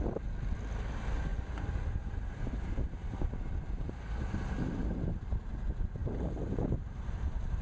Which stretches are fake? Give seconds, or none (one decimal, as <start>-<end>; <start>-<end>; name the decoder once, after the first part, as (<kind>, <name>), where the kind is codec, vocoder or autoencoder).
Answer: 1.3-2.0 (vocoder, BigVGAN v2); 3.0-4.0; 6.0-7.6